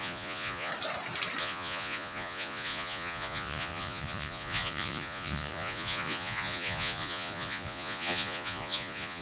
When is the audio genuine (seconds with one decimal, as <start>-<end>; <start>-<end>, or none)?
0.7-1.4